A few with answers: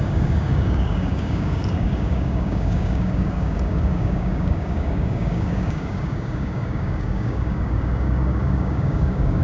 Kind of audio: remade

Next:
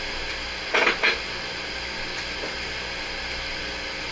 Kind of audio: recorded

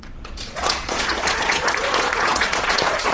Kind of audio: remade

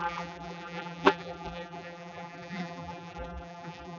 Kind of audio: remade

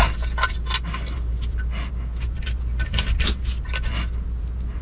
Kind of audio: recorded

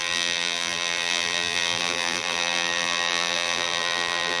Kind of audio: remade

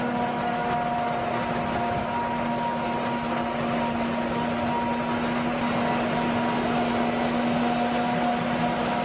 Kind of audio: recorded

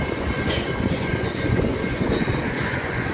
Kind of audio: remade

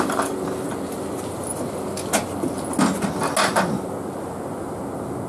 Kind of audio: recorded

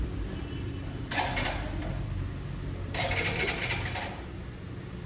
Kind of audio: remade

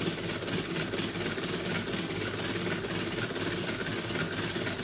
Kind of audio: recorded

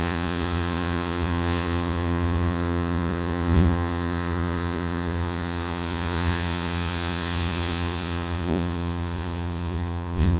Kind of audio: remade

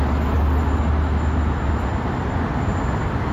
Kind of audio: recorded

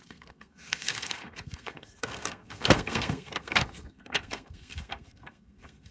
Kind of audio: remade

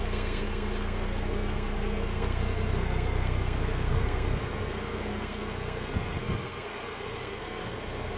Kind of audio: remade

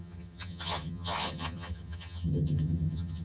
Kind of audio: remade